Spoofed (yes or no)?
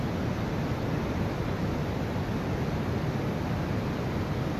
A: no